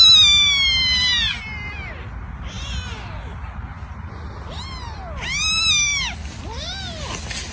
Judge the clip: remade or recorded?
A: recorded